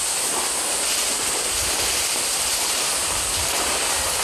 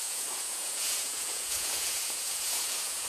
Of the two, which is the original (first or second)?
first